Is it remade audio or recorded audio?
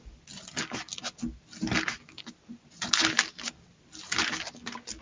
recorded